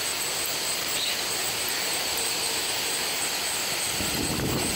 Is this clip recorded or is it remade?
remade